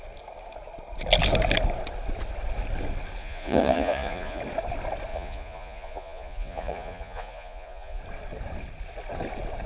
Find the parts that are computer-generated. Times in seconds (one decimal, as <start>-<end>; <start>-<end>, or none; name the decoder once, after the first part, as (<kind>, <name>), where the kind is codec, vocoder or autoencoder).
3.2-4.4 (vocoder, Vocos); 5.1-8.0